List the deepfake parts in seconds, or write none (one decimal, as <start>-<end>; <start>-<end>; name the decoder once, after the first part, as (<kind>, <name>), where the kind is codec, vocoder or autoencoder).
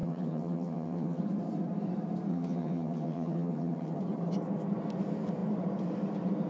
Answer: 0.0-1.2 (vocoder, HiFi-GAN); 2.3-4.0